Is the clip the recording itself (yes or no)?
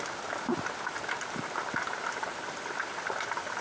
yes